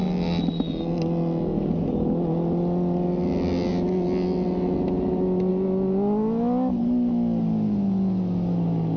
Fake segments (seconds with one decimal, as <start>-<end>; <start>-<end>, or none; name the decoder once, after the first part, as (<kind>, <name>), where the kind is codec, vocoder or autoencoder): none